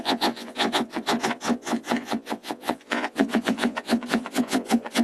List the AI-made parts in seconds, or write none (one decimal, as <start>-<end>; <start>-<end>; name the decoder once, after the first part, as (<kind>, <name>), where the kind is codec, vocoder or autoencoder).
0.0-5.0 (vocoder, Vocos)